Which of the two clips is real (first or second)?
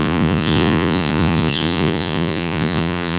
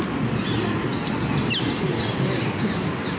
second